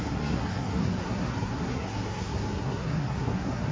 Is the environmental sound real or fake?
fake